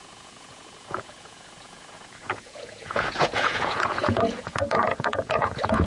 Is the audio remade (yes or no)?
yes